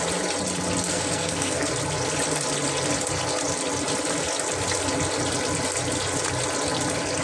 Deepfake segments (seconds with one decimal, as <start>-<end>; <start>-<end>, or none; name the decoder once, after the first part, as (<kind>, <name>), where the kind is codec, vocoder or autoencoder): 0.9-1.7 (codec, SNAC)

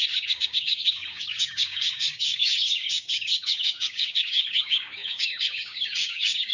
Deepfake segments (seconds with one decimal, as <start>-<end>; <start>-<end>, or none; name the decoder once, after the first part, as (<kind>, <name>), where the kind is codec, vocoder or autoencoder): 0.0-6.5 (codec, DAC)

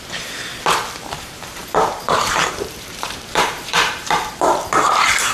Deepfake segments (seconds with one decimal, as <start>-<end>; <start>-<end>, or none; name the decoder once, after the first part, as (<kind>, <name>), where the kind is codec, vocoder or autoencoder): 0.0-0.5 (vocoder, BigVGAN v2); 1.1-5.3

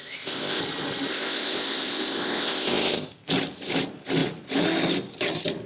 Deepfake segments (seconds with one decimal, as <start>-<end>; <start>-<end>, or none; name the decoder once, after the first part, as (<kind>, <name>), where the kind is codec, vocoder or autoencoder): 0.0-0.6 (codec, ZipCodec); 1.1-3.3

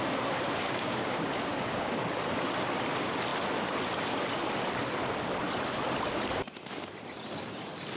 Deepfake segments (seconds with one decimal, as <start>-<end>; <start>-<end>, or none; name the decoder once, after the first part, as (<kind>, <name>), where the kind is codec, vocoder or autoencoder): 0.6-2.0 (codec, DAC)

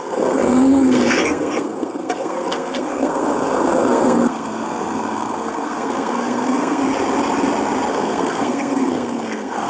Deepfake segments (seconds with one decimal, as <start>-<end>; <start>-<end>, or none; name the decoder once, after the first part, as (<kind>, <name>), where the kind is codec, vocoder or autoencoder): 0.0-6.8 (codec, SNAC); 7.9-9.7